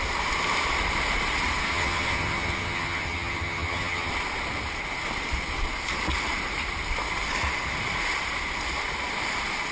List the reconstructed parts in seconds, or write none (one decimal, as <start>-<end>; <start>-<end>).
1.7-4.1